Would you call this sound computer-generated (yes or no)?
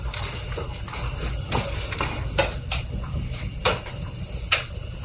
no